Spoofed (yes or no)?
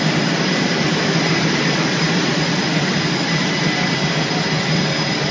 no